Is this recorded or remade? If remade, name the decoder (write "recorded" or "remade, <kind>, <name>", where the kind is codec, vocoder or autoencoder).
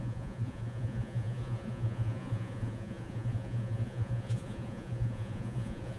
remade, vocoder, Vocos